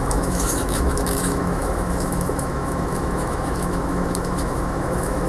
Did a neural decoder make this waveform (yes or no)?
yes